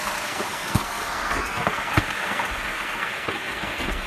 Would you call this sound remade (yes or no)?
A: yes